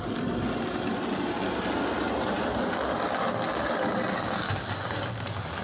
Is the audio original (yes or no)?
yes